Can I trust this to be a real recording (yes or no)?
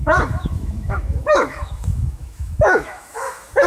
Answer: no